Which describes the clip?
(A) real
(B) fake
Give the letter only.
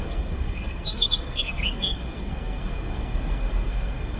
B